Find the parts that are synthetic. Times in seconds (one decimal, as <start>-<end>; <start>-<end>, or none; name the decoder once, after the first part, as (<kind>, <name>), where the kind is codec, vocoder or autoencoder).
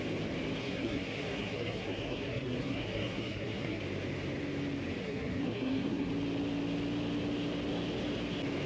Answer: 0.6-3.8 (codec, SNAC); 5.0-6.1